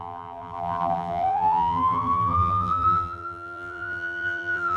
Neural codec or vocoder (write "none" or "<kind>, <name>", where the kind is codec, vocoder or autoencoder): vocoder, BigVGAN v2